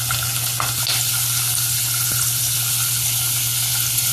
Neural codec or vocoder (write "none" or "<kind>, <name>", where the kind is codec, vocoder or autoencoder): none